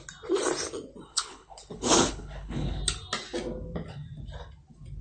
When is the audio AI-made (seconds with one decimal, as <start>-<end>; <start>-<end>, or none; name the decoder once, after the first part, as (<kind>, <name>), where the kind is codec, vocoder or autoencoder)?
1.1-2.8 (codec, HILCodec)